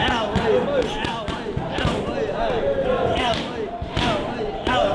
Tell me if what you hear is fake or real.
real